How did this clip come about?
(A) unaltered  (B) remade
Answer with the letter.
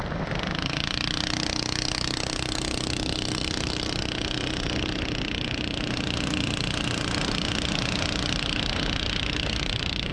A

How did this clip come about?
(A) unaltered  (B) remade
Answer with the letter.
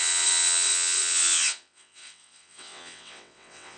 B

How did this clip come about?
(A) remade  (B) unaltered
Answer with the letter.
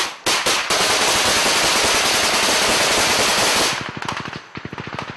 B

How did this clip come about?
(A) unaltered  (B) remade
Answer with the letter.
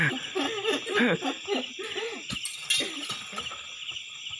A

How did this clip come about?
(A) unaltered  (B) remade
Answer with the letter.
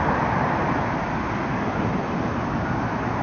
A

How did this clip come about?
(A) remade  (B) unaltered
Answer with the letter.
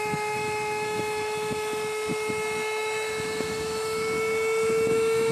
A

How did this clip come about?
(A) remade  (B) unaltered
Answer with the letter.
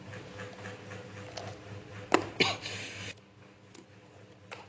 B